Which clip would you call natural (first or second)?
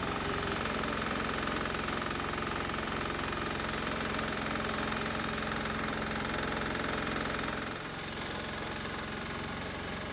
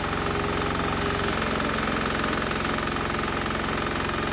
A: second